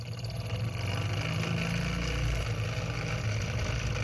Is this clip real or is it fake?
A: real